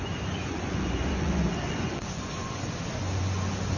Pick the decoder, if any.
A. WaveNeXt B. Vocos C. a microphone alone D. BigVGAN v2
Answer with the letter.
B